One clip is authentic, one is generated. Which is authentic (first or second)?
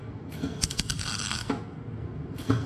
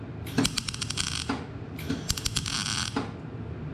second